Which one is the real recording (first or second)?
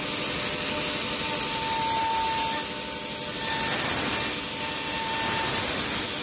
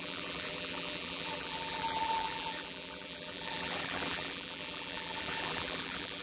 first